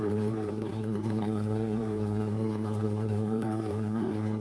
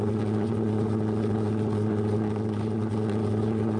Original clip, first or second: second